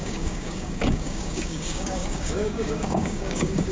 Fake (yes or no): yes